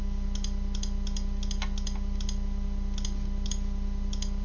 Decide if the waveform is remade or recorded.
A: recorded